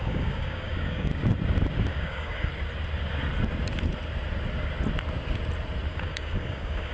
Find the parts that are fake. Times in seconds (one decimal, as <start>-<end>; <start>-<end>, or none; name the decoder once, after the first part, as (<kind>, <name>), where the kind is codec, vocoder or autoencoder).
0.0-1.1 (codec, DAC); 1.9-2.5; 5.9-6.9